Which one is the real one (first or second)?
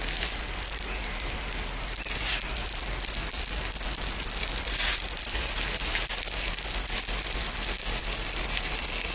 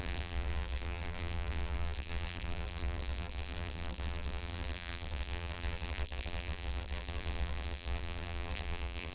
first